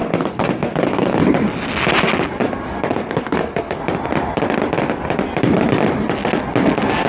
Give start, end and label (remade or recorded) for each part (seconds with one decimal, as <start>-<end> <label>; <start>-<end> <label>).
0.0-1.2 remade; 1.2-2.9 recorded; 2.9-3.8 remade; 3.8-7.1 recorded